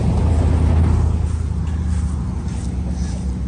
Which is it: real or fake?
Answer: real